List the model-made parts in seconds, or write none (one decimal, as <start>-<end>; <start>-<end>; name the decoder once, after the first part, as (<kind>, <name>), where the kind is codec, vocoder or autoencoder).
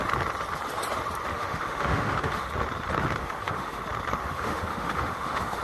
1.3-2.5 (autoencoder, DAC-VAE); 3.2-3.8; 4.2-5.6